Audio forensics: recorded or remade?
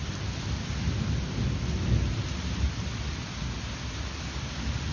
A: recorded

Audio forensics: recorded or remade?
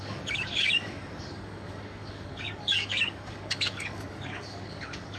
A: remade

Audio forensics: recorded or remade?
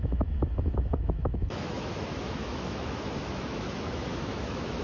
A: remade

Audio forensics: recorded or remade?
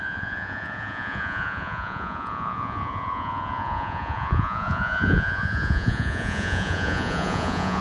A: remade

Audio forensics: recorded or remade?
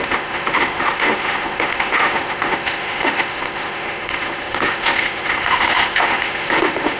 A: remade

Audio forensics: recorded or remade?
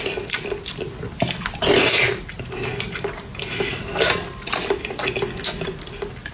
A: recorded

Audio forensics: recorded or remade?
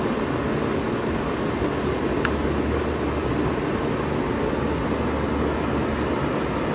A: recorded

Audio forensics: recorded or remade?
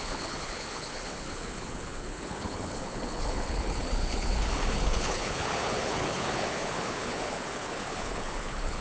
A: remade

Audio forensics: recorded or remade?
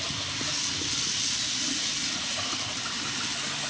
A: recorded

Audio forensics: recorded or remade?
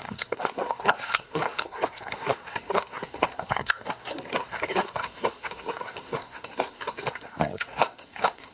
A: remade